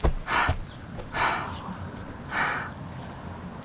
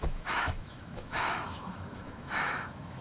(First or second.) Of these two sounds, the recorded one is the first